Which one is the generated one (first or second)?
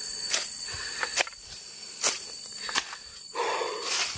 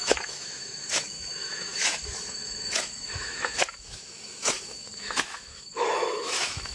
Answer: second